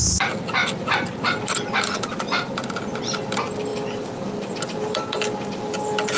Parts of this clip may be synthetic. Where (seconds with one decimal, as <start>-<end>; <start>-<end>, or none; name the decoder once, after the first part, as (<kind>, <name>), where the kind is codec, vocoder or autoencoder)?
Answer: none